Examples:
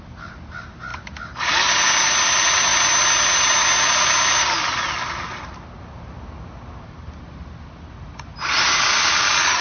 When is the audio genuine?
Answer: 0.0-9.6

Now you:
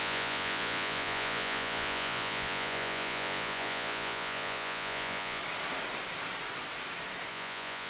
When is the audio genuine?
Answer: 5.4-7.3

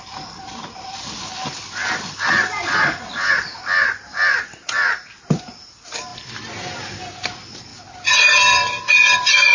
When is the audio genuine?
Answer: 0.0-3.5; 4.3-7.7; 8.3-9.5